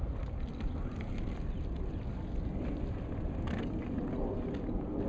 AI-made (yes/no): no